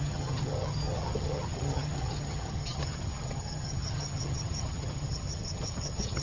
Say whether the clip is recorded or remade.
remade